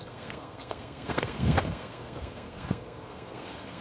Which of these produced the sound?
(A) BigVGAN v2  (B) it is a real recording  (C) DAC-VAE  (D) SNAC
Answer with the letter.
D